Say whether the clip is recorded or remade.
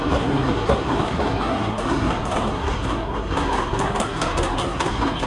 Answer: remade